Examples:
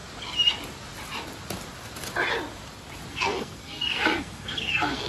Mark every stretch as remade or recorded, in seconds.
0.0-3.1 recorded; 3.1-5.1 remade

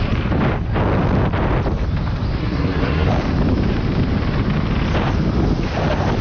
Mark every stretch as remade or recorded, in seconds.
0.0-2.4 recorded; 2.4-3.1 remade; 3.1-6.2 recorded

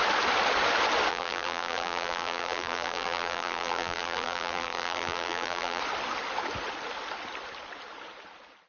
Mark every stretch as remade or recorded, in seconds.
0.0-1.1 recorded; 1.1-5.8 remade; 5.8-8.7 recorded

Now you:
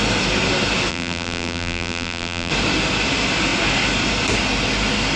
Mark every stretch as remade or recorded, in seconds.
0.0-0.9 recorded; 0.9-2.5 remade; 2.5-5.2 recorded

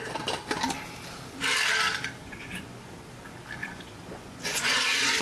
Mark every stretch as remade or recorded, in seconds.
0.0-2.2 recorded; 2.2-2.9 remade; 2.9-3.6 recorded; 3.6-5.2 remade